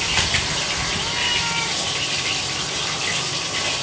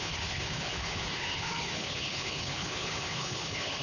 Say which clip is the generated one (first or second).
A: second